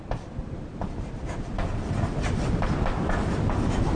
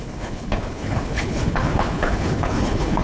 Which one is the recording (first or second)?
first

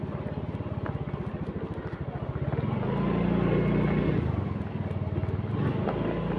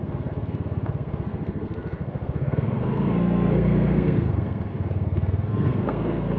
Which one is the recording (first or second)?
first